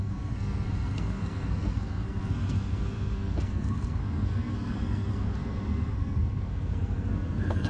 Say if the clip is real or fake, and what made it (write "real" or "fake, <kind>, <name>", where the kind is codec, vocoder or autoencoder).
fake, codec, SNAC